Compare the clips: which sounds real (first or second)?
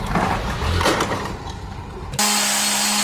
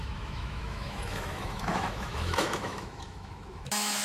first